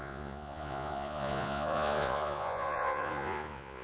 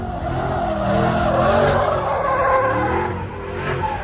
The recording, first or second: second